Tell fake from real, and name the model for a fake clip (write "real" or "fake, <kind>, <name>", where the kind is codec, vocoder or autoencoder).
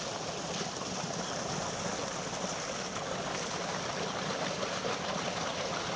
real